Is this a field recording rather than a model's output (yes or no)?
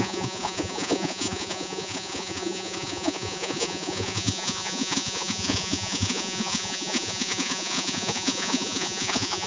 no